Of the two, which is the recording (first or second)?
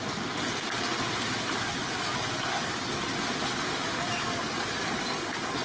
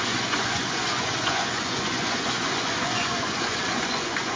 first